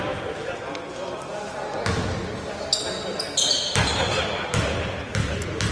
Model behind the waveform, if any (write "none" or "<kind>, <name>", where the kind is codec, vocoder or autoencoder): none